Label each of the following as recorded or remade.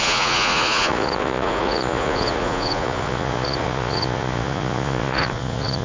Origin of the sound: remade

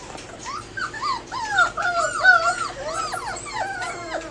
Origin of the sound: recorded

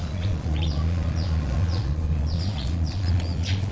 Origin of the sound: remade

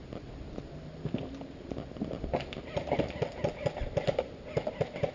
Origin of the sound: recorded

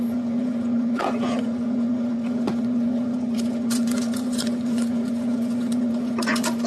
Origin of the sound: remade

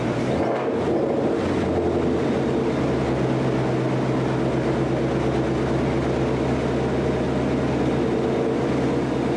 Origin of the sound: recorded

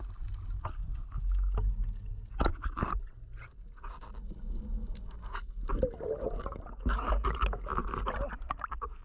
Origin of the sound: recorded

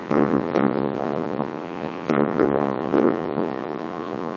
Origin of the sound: remade